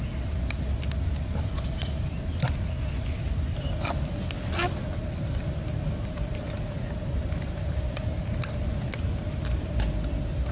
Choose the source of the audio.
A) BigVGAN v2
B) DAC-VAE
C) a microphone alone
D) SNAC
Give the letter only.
C